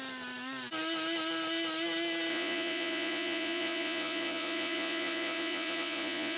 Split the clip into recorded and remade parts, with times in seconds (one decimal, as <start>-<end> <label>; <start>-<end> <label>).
0.0-2.3 recorded; 2.3-6.4 remade